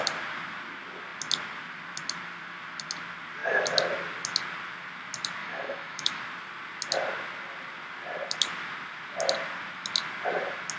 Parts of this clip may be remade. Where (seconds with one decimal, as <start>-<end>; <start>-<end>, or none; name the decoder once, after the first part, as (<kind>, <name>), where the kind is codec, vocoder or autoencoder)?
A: 5.4-6.2 (autoencoder, DAC-VAE)